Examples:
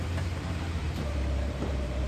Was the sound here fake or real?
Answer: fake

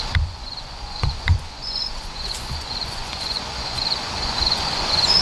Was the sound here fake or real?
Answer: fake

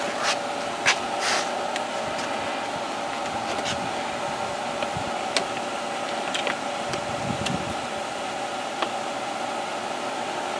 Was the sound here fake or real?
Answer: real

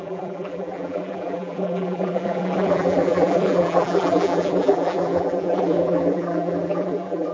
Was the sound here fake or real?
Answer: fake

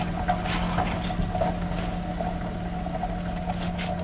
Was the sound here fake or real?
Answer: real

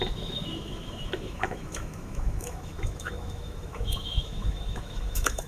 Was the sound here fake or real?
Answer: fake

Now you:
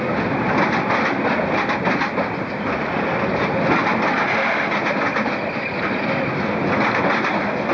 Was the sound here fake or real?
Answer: real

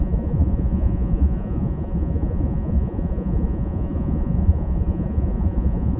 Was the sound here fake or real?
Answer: fake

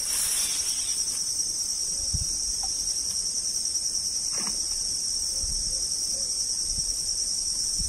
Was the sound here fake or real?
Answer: real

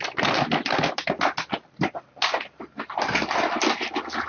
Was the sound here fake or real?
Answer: real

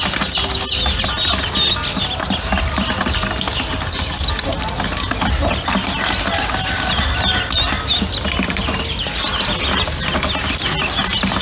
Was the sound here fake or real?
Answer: real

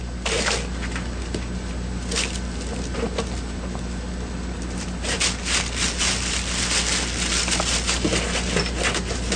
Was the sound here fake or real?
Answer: real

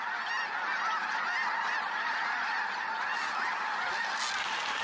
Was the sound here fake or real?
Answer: real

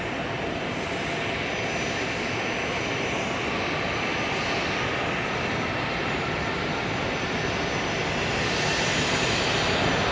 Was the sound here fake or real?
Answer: real